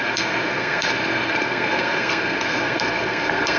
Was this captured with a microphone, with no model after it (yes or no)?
no